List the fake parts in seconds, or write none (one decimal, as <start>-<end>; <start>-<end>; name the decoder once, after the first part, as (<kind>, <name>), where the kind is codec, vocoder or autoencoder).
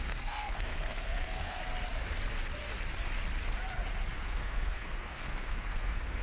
0.0-1.6 (codec, SNAC); 4.2-6.2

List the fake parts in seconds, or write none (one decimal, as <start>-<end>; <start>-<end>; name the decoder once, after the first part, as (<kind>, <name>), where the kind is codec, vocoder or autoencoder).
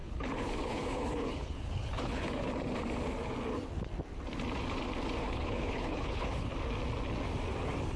0.0-2.5 (codec, HILCodec); 5.2-6.5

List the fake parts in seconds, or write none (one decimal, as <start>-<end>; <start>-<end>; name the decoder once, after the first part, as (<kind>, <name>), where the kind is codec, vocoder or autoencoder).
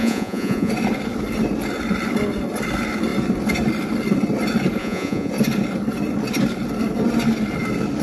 0.0-0.7 (vocoder, Vocos); 4.8-5.3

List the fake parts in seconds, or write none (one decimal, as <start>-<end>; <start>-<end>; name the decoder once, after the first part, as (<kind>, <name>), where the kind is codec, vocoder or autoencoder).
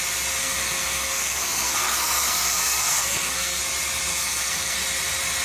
0.4-3.6 (codec, SNAC); 4.1-4.8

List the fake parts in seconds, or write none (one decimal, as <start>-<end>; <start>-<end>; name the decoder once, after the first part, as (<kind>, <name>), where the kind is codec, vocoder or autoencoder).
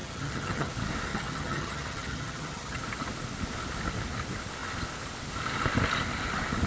0.0-0.7 (vocoder, HiFi-GAN); 1.1-2.8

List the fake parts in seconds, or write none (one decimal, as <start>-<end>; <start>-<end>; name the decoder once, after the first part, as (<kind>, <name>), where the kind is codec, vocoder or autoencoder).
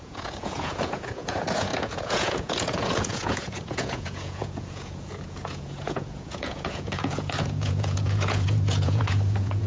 0.0-9.7 (vocoder, Vocos)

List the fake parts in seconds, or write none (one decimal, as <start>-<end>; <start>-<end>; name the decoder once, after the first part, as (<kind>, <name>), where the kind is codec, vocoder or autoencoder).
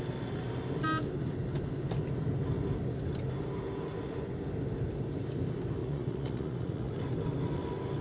5.8-6.9 (vocoder, Vocos)